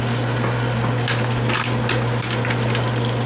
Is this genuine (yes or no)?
yes